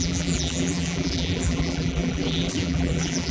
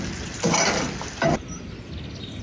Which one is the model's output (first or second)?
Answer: first